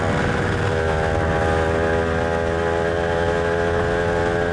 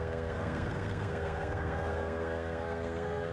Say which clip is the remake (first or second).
second